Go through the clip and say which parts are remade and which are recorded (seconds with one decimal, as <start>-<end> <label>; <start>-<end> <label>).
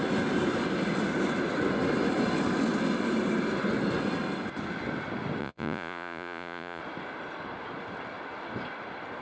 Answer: 0.0-5.4 recorded; 5.4-6.8 remade; 6.8-9.2 recorded